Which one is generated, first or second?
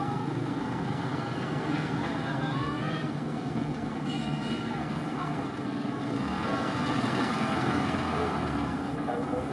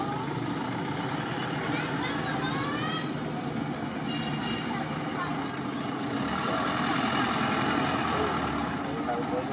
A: first